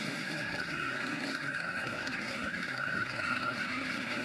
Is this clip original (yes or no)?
no